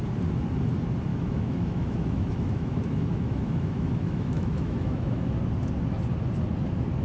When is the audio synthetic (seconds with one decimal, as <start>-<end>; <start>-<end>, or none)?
1.1-5.3